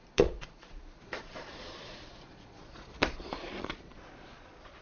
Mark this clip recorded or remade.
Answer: remade